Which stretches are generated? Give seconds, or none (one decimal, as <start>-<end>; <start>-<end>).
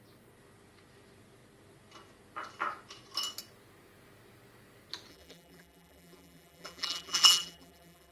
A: 5.1-8.1